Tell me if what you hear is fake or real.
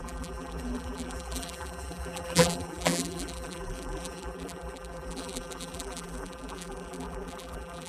fake